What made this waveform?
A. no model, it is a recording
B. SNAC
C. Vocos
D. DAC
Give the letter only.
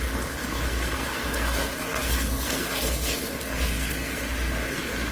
B